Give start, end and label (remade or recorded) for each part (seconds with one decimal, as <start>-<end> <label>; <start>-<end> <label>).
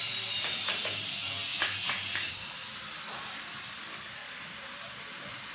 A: 0.0-1.5 recorded; 1.5-2.3 remade; 2.3-4.2 recorded; 4.2-5.0 remade; 5.0-5.5 recorded